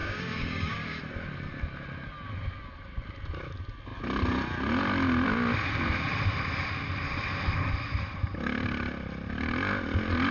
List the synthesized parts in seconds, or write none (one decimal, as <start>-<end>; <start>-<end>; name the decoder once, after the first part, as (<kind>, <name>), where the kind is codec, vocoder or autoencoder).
0.0-1.0 (codec, DAC)